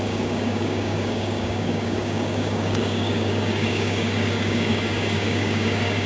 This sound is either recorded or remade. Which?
remade